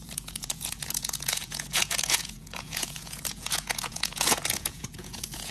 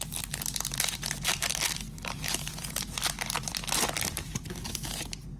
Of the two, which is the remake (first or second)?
first